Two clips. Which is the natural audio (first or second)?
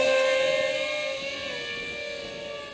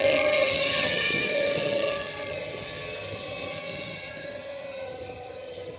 first